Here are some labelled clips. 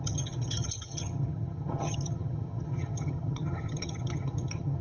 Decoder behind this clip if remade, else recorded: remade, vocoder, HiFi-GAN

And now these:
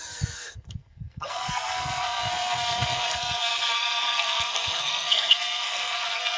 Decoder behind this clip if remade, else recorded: remade, codec, SNAC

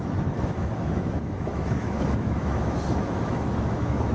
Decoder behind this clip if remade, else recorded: remade, autoencoder, DAC-VAE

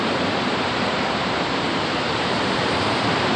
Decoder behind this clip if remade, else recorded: remade, vocoder, BigVGAN v2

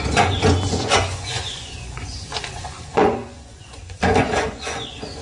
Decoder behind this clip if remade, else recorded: remade, vocoder, Vocos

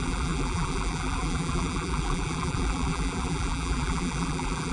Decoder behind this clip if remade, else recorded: remade, vocoder, BigVGAN v2